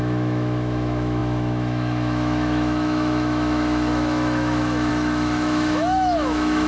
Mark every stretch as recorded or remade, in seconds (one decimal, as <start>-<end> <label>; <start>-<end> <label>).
0.0-6.7 remade